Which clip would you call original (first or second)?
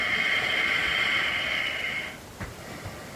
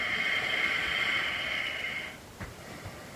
first